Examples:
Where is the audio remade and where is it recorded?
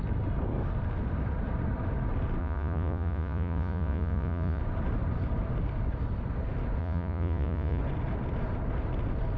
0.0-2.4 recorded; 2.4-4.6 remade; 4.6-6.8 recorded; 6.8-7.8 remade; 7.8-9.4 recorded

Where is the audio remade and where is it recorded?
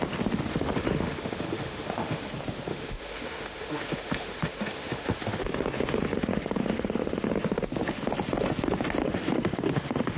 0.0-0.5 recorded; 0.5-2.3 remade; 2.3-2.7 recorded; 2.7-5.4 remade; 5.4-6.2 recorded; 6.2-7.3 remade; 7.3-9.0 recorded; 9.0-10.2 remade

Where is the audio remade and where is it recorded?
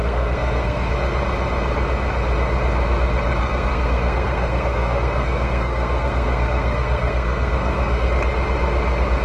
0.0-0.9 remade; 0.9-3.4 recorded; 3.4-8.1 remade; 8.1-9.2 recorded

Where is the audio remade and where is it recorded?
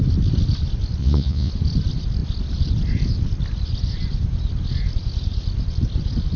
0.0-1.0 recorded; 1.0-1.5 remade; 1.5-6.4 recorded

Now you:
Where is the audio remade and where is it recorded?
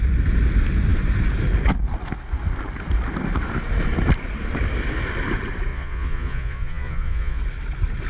0.0-5.7 recorded; 5.7-7.4 remade; 7.4-8.1 recorded